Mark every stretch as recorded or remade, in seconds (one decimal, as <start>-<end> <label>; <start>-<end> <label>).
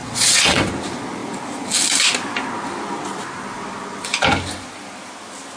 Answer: 0.0-0.7 remade; 0.7-5.6 recorded